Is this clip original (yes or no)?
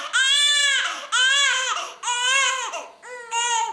yes